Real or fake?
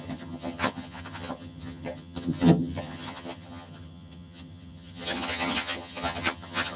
fake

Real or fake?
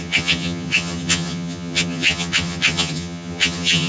fake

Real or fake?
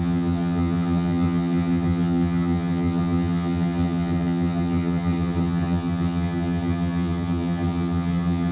fake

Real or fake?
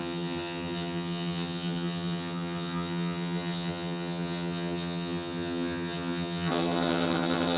fake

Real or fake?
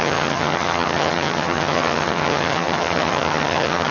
fake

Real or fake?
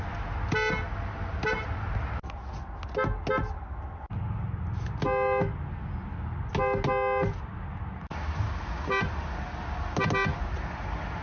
real